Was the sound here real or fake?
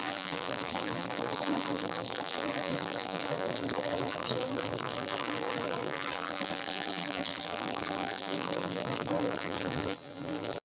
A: fake